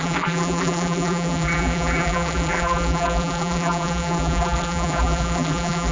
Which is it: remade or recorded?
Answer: remade